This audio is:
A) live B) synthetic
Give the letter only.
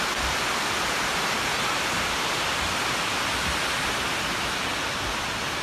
A